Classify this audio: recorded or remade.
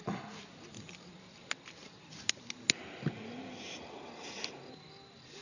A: recorded